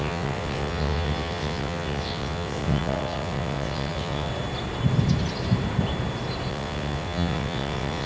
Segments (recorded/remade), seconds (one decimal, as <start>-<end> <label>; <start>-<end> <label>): 0.0-4.3 remade; 4.3-6.5 recorded; 6.5-8.1 remade